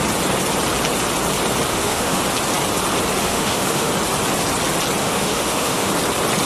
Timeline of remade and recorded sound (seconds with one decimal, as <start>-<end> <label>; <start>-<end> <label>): 0.0-1.7 recorded; 1.7-2.2 remade; 2.2-3.2 recorded; 3.2-3.9 remade; 3.9-5.0 recorded; 5.0-5.9 remade; 5.9-6.5 recorded